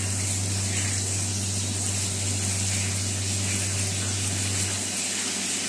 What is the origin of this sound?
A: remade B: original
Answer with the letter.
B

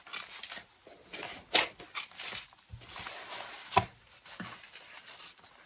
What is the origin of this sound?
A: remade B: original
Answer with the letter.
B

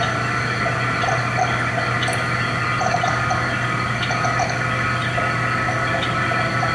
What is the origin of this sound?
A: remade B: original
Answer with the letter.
B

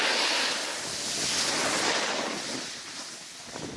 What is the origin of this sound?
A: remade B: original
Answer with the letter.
B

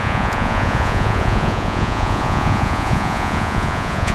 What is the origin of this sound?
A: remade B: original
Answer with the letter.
A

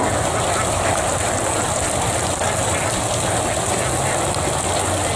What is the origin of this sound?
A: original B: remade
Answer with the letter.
A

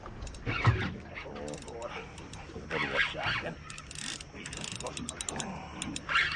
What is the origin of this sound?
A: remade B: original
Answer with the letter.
B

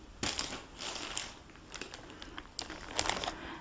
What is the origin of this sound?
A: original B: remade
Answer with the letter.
A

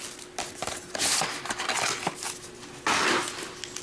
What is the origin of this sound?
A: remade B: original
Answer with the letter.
B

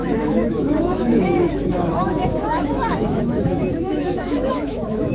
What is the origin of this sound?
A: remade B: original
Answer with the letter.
A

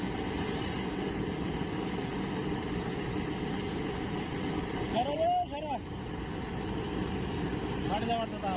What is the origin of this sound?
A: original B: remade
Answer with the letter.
A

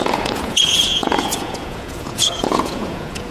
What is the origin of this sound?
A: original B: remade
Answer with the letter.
B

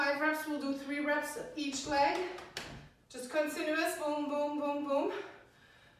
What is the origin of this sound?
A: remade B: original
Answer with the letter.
B